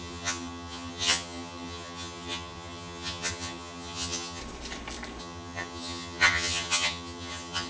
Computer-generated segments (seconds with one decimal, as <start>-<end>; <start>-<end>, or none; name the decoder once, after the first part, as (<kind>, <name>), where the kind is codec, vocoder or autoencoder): 0.0-4.4 (vocoder, HiFi-GAN); 5.2-7.7